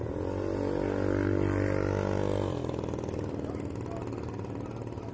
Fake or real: real